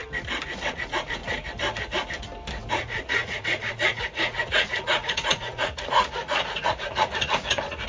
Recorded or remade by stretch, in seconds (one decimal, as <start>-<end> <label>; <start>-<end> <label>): 0.0-0.7 recorded; 0.7-1.2 remade; 1.2-2.7 recorded; 2.7-7.9 remade